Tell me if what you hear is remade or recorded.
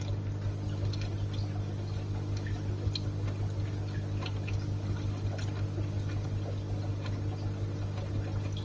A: recorded